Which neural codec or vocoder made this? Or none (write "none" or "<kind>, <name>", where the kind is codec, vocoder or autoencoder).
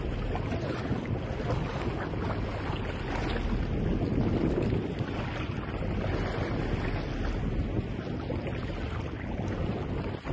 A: none